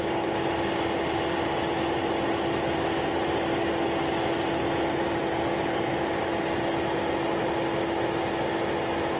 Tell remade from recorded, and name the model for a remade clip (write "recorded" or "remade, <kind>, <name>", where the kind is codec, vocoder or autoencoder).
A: recorded